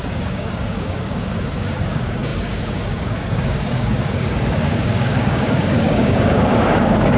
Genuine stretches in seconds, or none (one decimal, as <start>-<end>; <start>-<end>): none